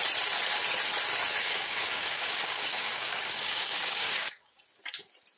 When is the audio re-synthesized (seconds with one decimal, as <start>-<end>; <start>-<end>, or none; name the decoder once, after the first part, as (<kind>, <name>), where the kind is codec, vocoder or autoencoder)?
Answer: 1.4-4.6 (codec, DAC)